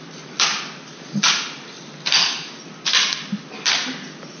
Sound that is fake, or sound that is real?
real